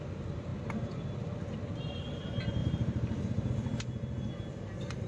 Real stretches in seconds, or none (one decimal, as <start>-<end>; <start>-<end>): 0.0-2.6; 3.5-5.1